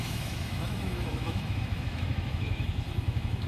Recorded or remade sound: remade